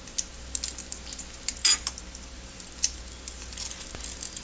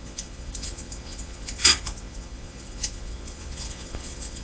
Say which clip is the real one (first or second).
first